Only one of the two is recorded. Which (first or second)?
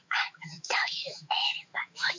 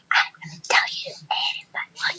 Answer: second